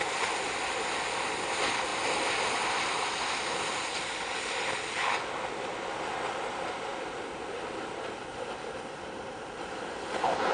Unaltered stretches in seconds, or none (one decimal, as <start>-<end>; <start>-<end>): 0.0-10.5